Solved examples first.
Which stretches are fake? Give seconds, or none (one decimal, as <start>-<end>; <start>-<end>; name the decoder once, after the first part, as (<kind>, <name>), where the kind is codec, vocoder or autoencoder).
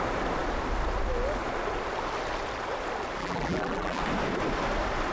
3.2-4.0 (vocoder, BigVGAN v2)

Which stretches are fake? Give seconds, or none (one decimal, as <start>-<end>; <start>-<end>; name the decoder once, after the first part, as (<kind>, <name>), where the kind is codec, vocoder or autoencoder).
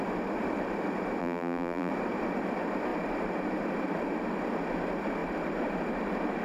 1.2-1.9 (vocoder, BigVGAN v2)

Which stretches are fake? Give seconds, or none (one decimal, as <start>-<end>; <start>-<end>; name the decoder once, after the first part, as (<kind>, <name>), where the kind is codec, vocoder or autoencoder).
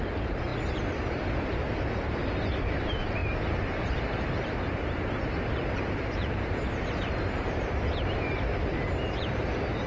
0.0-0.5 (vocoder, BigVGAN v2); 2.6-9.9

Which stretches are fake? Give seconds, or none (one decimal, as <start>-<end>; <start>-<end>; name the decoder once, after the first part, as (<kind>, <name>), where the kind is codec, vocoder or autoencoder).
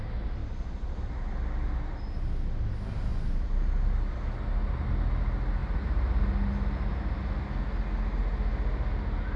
0.4-1.3 (vocoder, BigVGAN v2)